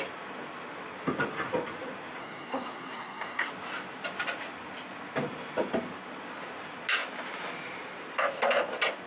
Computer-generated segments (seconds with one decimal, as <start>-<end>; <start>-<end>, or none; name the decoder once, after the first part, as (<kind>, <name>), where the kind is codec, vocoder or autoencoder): 2.2-3.5 (codec, SNAC)